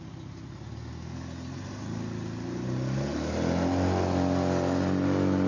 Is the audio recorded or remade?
recorded